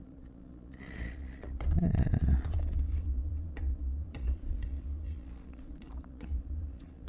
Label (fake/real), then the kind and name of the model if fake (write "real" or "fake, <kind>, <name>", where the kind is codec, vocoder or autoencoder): fake, vocoder, Vocos